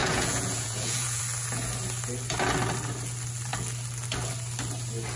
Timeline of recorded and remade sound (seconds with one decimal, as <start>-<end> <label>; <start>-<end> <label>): 0.0-1.2 remade; 1.2-5.2 recorded

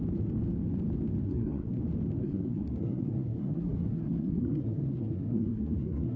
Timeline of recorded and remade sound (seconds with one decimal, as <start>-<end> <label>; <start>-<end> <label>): 0.0-1.2 recorded; 1.2-1.8 remade; 1.8-2.2 recorded; 2.2-6.2 remade

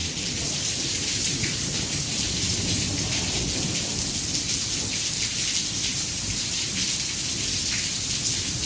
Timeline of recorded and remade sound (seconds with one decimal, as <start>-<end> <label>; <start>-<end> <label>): 0.0-3.4 remade; 3.4-5.9 recorded; 5.9-6.8 remade; 6.8-8.7 recorded